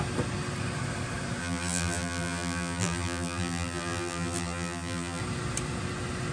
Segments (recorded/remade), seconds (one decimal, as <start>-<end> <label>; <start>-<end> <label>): 0.0-1.4 recorded; 1.4-5.2 remade; 5.2-6.3 recorded